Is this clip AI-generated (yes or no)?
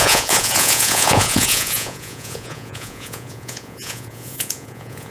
yes